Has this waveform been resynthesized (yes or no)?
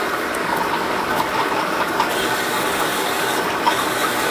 yes